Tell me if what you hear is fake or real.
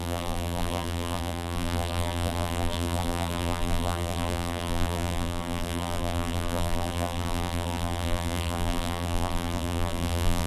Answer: fake